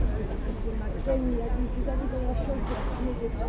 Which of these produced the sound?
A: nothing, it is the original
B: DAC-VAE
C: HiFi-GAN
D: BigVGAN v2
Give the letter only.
A